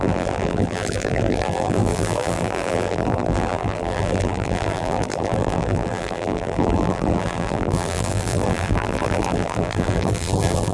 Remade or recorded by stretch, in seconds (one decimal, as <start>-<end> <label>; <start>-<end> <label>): 0.0-10.7 remade